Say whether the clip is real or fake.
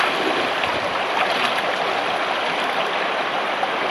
fake